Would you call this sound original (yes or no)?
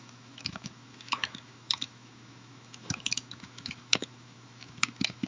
no